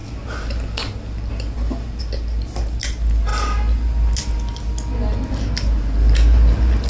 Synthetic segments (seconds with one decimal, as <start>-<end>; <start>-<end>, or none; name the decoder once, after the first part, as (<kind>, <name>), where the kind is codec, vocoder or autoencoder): none

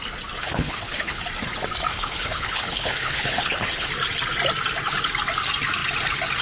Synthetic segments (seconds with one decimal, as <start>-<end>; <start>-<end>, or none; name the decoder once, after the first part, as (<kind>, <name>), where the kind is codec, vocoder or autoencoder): 0.4-1.2 (codec, HILCodec); 1.9-3.9

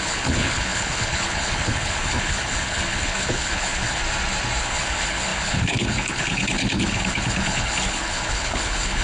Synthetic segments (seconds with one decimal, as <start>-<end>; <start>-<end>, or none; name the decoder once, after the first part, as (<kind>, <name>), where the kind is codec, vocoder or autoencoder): 0.0-4.0 (codec, HILCodec); 4.6-9.0

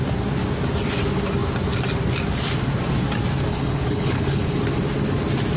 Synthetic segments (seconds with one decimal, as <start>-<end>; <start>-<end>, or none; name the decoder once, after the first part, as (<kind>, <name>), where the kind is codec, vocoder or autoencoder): 3.5-4.6 (codec, HILCodec)